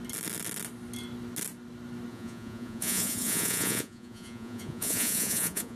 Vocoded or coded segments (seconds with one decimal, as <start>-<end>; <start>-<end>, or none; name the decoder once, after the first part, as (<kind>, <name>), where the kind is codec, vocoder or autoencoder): 2.1-5.8 (vocoder, Vocos)